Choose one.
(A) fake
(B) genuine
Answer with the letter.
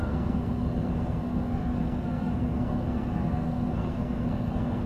A